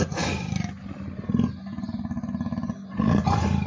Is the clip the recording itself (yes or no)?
yes